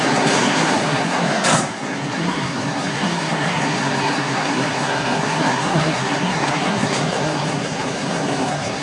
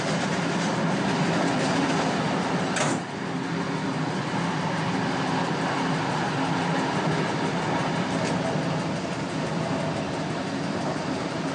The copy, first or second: first